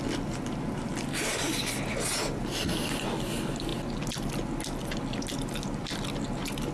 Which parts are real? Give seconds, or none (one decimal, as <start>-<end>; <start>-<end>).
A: 0.0-6.7